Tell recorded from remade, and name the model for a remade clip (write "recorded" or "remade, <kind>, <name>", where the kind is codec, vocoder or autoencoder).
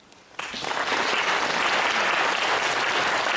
recorded